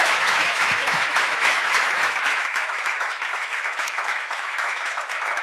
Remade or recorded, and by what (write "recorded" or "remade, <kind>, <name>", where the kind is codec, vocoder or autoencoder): remade, autoencoder, DAC-VAE